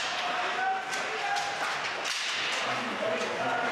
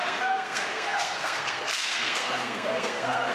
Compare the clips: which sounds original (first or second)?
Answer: first